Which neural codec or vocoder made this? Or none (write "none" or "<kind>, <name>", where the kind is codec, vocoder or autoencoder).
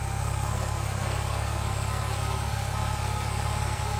codec, SNAC